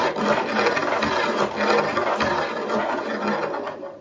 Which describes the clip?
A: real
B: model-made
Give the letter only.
A